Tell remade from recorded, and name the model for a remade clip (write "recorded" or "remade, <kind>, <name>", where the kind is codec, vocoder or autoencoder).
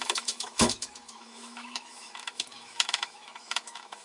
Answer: remade, autoencoder, DAC-VAE